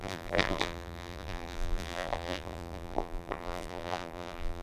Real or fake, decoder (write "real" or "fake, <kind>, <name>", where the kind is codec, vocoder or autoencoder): fake, vocoder, BigVGAN v2